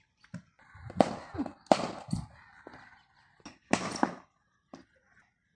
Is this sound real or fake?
real